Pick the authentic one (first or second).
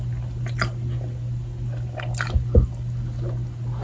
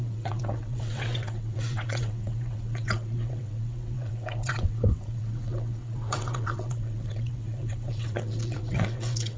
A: first